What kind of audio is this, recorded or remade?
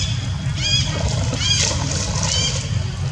recorded